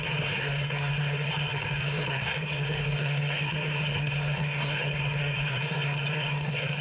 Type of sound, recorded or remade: remade